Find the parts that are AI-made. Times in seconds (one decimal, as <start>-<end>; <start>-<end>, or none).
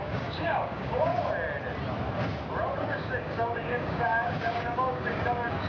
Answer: 0.0-1.1; 2.8-5.7